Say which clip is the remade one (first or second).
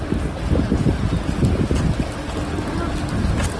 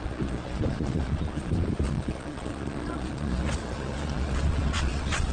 second